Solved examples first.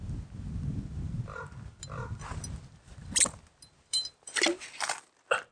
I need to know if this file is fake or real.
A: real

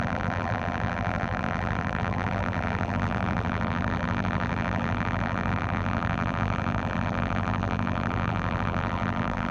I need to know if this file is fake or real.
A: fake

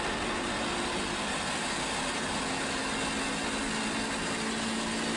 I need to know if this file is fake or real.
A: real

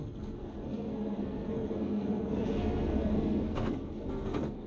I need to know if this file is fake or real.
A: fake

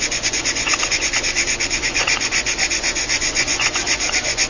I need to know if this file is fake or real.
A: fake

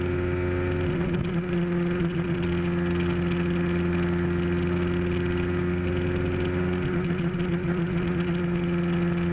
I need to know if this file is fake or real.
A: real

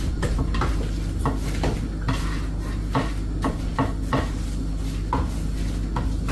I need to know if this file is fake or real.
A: real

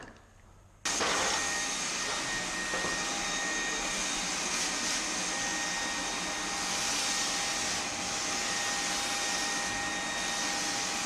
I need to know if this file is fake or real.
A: real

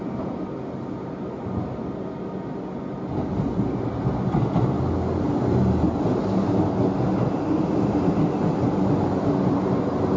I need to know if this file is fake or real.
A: real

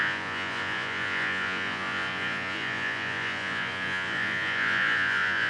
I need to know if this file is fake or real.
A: fake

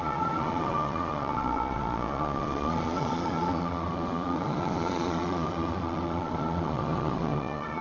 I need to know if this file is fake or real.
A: fake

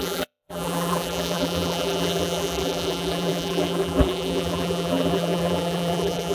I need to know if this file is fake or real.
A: fake